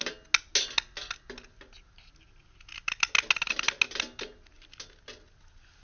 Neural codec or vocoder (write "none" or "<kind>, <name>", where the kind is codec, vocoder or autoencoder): none